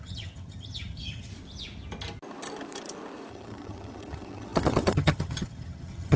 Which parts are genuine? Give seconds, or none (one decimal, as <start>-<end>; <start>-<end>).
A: 1.3-3.3